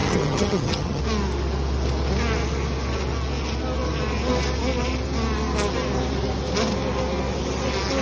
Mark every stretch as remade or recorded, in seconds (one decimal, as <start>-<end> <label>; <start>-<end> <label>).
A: 0.0-1.0 remade; 1.0-8.0 recorded